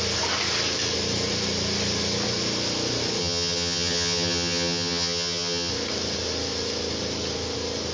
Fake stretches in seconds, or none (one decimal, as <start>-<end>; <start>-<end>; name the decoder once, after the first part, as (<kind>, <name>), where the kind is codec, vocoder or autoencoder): 3.2-5.7 (vocoder, HiFi-GAN)